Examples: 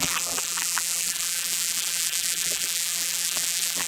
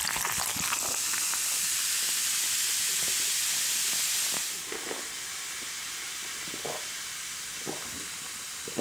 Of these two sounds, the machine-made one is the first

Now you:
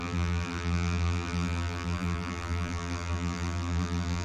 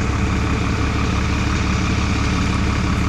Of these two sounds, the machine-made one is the first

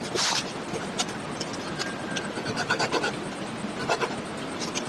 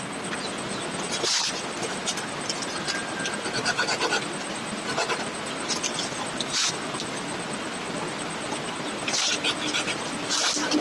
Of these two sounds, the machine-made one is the first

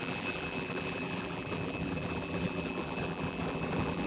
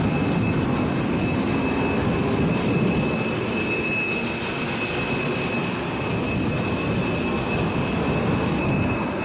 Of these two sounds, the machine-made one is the first